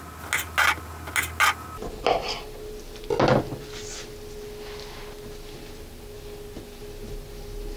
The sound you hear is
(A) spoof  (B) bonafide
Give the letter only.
B